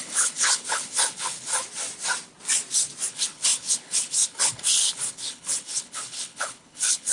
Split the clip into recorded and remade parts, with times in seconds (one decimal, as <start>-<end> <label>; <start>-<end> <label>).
0.0-1.5 remade; 1.5-3.1 recorded; 3.1-7.1 remade